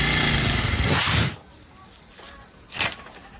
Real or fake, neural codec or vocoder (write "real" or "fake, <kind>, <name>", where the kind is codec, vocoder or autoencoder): real